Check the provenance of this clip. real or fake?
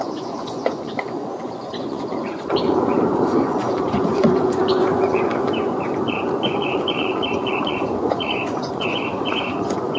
fake